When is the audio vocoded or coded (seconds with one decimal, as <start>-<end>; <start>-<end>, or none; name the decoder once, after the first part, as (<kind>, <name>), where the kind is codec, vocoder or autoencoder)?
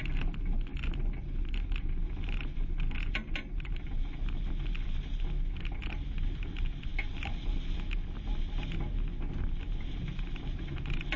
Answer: none